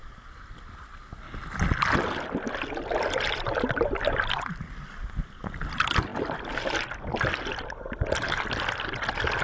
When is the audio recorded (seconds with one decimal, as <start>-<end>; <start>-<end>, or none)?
0.0-9.4